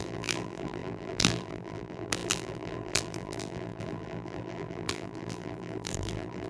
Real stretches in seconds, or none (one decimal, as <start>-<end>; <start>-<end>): none